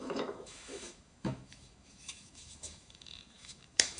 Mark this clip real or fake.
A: fake